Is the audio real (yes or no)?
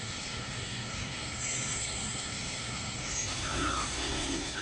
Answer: no